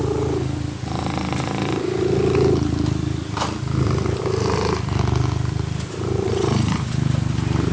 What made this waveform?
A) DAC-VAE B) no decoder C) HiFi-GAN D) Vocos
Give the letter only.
B